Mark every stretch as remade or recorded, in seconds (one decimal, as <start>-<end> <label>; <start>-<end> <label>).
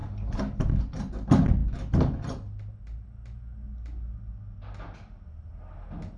0.0-6.2 recorded